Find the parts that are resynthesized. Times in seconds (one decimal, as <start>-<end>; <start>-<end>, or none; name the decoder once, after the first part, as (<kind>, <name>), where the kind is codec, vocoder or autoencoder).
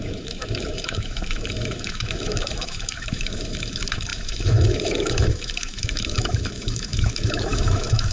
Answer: 0.0-8.1 (autoencoder, DAC-VAE)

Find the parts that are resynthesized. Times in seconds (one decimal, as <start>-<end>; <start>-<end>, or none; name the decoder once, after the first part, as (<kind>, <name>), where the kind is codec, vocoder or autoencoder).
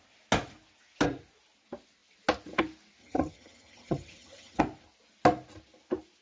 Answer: 3.0-4.6 (vocoder, HiFi-GAN)